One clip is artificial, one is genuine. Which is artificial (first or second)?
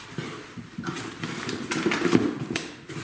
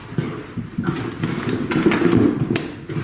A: first